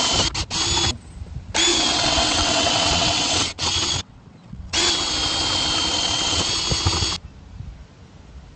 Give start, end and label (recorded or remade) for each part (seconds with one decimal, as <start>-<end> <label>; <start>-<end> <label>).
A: 0.0-1.7 recorded; 1.7-5.1 remade; 5.1-5.9 recorded; 5.9-6.5 remade; 6.5-8.6 recorded